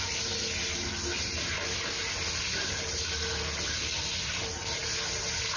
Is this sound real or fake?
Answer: real